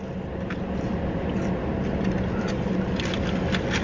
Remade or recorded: recorded